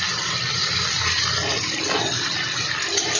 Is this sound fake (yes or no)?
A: yes